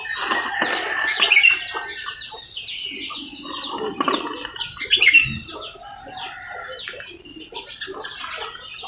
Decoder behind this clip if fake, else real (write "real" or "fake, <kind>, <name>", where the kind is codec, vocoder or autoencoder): real